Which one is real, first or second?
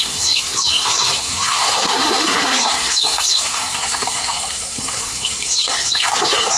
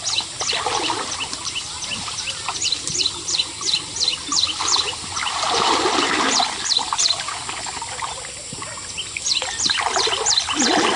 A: second